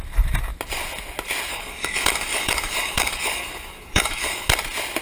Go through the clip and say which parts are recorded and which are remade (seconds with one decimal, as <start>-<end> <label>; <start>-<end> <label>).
0.0-1.5 recorded; 1.5-4.5 remade; 4.5-5.0 recorded